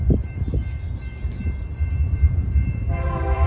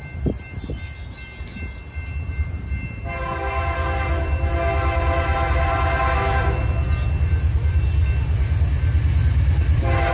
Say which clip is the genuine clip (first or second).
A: second